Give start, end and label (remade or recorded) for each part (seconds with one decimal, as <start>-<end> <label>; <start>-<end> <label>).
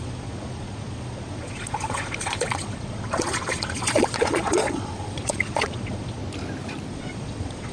0.0-6.2 remade; 6.2-6.9 recorded; 6.9-7.7 remade